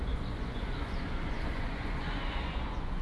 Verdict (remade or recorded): remade